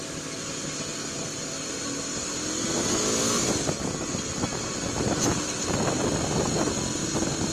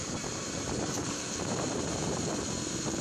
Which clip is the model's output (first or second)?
second